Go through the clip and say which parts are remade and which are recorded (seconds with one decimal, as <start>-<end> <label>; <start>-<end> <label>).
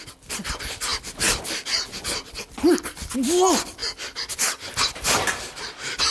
0.0-6.1 recorded